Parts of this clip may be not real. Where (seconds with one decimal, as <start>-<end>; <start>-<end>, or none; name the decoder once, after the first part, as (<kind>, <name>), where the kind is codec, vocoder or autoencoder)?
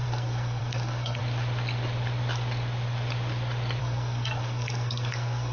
0.0-1.2 (codec, SNAC); 3.8-5.5